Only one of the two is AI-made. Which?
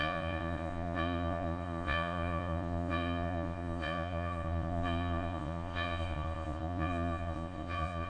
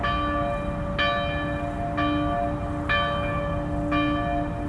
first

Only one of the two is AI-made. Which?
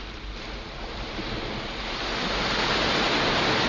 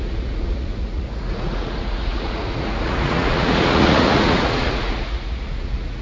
second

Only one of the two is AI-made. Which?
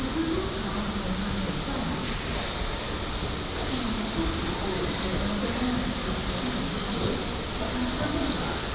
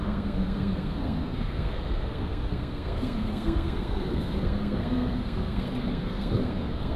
second